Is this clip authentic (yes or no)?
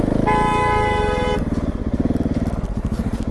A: yes